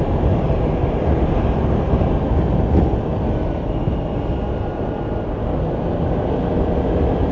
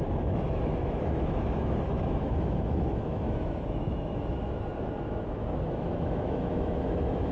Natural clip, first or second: first